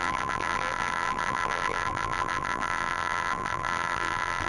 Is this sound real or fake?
fake